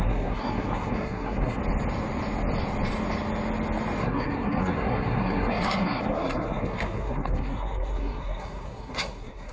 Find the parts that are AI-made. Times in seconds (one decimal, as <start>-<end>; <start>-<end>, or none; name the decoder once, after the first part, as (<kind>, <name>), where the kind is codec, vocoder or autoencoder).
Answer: 0.0-1.6 (codec, SNAC); 4.0-9.5